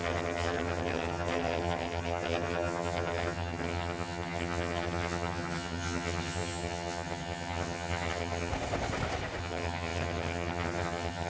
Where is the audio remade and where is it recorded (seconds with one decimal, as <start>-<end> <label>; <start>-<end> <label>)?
0.0-8.5 remade; 8.5-9.4 recorded; 9.4-11.3 remade